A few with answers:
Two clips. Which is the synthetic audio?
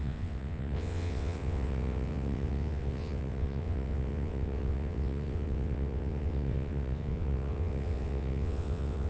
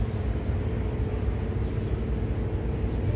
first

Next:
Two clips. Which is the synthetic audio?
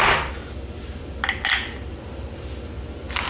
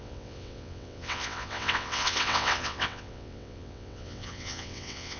second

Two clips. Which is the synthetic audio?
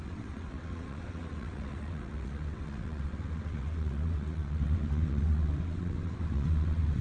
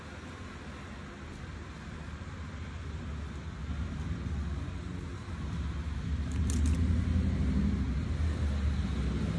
first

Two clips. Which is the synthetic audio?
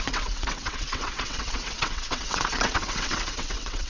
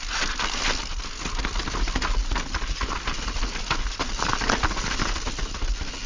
first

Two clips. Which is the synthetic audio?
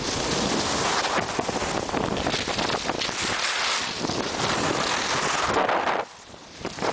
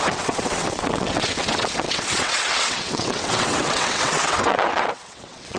second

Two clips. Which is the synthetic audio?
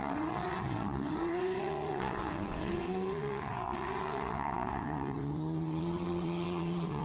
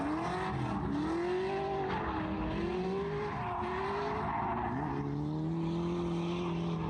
first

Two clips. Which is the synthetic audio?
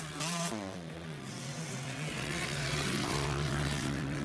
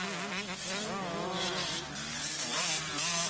first